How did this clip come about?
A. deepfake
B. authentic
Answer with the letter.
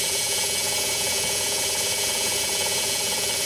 A